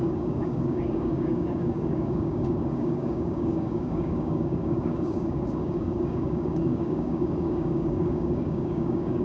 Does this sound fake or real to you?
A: fake